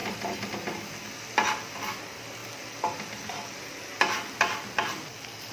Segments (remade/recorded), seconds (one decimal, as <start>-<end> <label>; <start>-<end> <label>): 0.0-0.5 remade; 0.5-2.4 recorded; 2.4-5.5 remade